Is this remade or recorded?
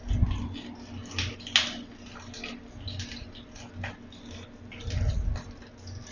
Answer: recorded